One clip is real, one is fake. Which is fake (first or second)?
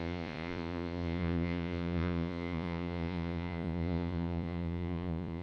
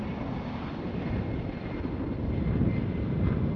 first